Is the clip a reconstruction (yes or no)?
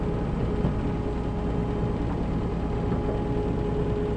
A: no